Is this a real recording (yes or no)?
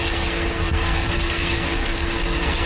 no